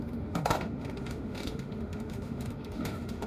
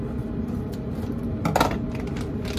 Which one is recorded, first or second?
second